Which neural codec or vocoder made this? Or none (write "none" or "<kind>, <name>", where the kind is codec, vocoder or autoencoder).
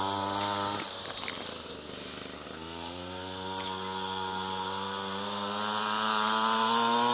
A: none